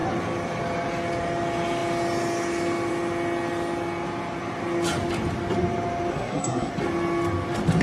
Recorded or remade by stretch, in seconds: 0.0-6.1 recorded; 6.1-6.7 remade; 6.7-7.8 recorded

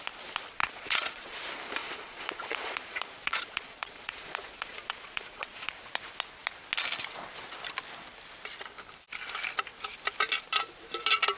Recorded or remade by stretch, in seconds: 0.0-0.6 recorded; 0.6-1.4 remade; 1.4-1.8 recorded; 1.8-5.7 remade; 5.7-11.4 recorded

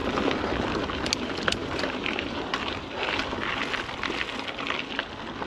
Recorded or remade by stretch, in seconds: 0.0-1.6 recorded; 1.6-2.9 remade; 2.9-5.5 recorded